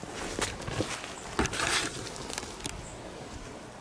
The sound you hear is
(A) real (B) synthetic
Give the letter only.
A